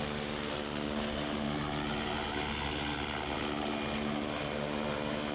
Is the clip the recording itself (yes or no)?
yes